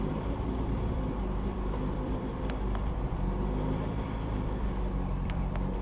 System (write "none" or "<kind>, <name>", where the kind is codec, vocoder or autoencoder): vocoder, BigVGAN v2